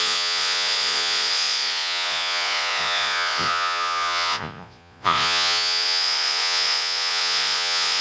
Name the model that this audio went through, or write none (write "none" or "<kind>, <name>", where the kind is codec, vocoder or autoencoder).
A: vocoder, Vocos